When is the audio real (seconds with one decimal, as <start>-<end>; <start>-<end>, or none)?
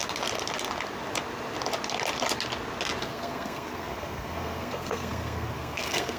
0.0-3.0